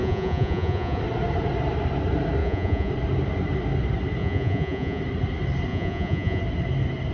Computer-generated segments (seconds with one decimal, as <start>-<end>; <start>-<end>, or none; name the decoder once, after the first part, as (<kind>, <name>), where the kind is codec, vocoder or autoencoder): 0.0-1.0 (vocoder, Vocos); 2.4-2.9; 4.2-5.0; 5.7-6.4